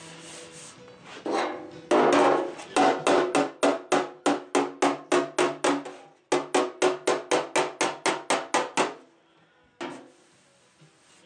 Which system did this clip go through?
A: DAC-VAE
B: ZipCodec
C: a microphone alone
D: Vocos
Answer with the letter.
C